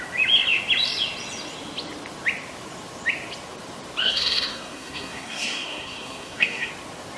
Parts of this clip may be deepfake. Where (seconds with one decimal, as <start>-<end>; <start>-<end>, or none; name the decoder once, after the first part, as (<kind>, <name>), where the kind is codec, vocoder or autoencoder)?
4.0-6.7 (codec, SNAC)